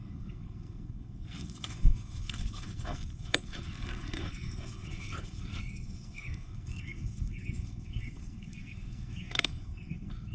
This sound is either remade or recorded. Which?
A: remade